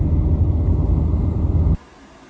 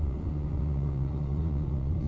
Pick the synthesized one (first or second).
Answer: second